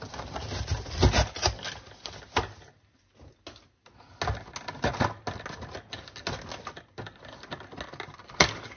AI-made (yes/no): no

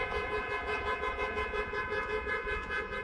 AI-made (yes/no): yes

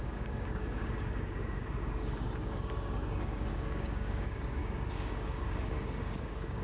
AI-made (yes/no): yes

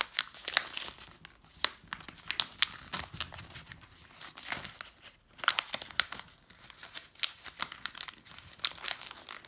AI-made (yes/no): no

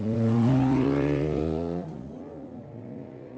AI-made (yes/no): yes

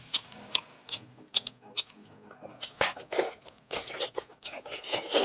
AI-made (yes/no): no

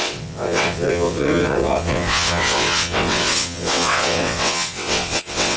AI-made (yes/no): yes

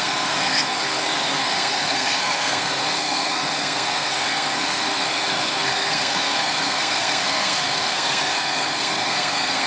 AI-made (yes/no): yes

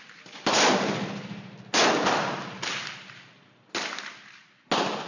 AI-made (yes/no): no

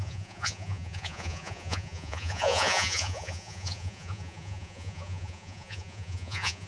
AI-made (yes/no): yes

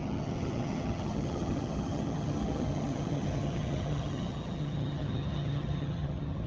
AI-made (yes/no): yes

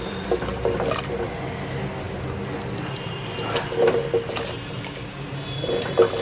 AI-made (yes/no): no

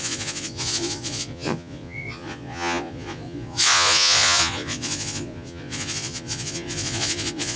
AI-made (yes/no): yes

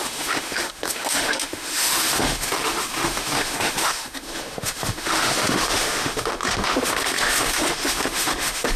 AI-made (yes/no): yes